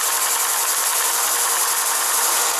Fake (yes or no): no